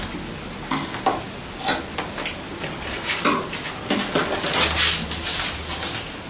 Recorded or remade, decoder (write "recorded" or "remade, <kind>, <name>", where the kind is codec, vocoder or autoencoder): recorded